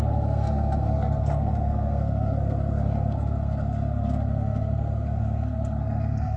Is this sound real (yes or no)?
no